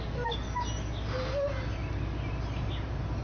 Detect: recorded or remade recorded